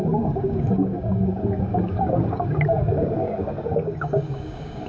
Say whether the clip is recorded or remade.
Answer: remade